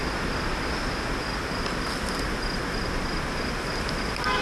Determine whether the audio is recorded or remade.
recorded